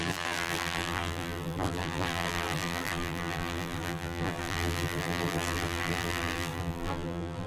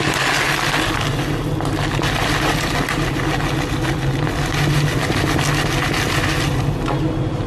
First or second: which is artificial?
first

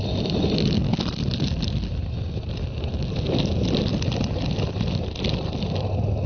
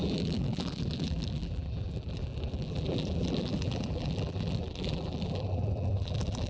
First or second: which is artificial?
second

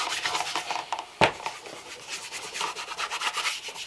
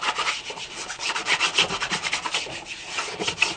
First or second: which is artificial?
second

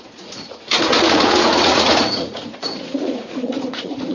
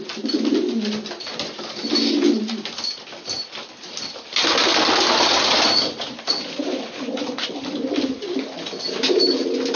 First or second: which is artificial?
first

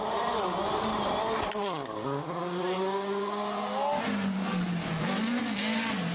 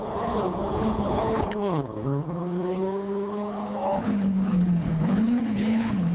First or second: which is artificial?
second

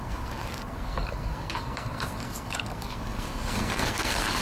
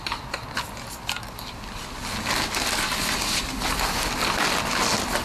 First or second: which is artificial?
first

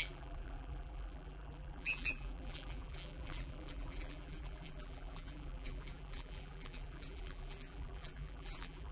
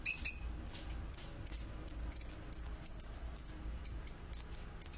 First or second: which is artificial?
first